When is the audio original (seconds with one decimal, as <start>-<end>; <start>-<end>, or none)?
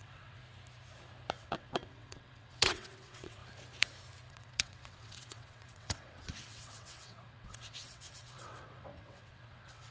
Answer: 0.4-1.4; 3.4-4.3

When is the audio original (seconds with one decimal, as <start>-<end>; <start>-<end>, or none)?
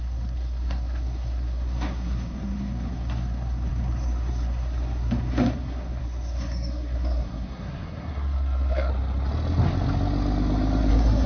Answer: 8.9-10.9